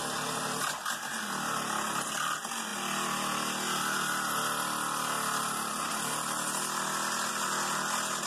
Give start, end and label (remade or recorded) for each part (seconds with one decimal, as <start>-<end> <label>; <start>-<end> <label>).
0.0-8.3 recorded